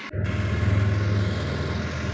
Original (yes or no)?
yes